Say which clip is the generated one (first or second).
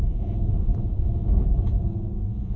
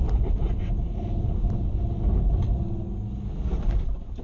first